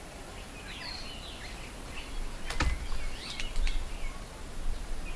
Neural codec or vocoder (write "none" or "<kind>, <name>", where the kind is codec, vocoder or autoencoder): none